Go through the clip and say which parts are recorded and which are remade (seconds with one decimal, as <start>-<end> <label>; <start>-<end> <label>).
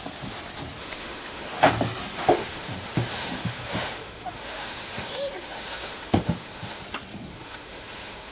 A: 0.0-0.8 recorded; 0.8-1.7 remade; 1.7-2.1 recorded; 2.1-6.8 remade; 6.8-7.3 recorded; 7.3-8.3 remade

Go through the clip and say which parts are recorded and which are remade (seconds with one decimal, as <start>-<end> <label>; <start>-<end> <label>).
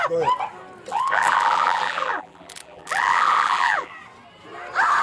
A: 0.0-0.9 recorded; 0.9-3.9 remade; 3.9-5.0 recorded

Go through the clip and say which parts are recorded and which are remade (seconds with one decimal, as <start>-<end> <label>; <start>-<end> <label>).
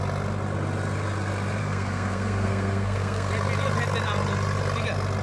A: 0.0-1.6 recorded; 1.6-3.3 remade; 3.3-5.2 recorded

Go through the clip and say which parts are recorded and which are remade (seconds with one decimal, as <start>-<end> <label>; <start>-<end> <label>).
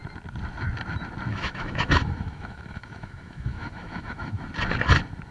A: 0.0-1.3 recorded; 1.3-4.5 remade; 4.5-5.3 recorded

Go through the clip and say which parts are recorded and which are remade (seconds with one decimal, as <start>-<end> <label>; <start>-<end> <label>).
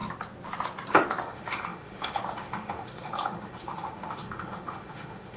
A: 0.0-1.2 recorded; 1.2-5.4 remade